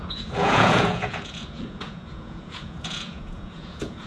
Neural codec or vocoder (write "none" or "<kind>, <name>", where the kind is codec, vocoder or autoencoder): vocoder, Vocos